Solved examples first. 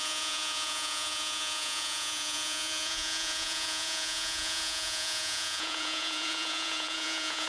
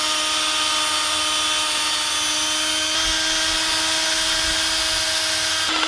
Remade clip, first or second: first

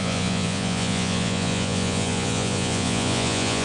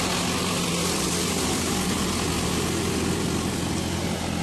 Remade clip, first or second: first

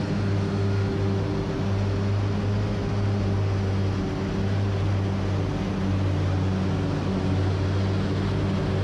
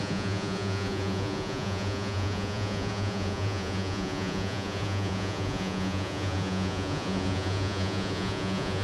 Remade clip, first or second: second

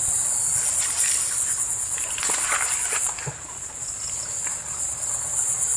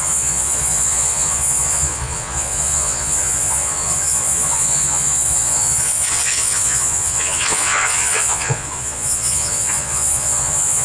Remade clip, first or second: second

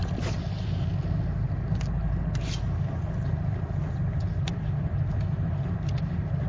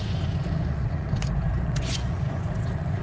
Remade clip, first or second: second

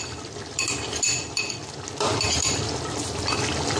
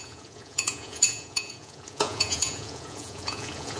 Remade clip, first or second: second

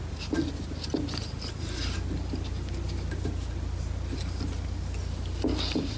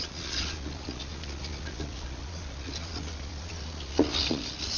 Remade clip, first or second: second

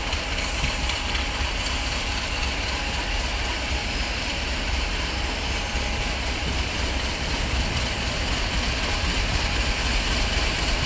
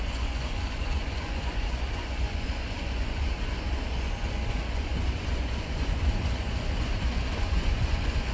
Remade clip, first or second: second